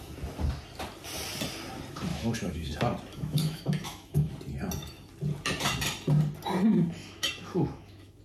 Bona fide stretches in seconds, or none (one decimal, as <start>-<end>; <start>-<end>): 0.0-2.1; 2.7-3.1; 4.3-7.0